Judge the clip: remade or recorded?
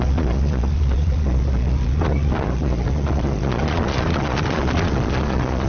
remade